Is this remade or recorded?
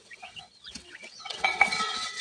remade